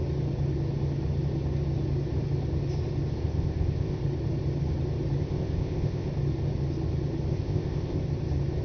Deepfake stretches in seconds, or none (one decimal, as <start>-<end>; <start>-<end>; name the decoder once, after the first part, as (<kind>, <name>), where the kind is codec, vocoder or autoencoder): 3.2-4.0 (codec, ZipCodec); 5.2-6.1; 7.3-8.0